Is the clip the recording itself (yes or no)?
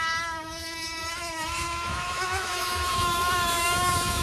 no